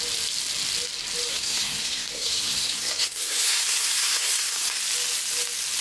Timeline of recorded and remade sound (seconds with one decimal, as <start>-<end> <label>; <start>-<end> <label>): 0.0-1.3 recorded; 1.3-4.8 remade; 4.8-5.8 recorded